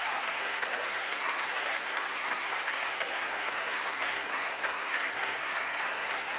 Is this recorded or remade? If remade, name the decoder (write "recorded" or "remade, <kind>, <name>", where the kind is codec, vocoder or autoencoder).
remade, codec, SNAC